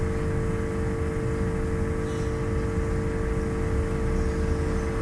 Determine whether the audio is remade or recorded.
recorded